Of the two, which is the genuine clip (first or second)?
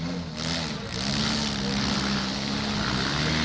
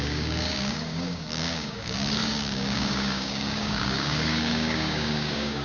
first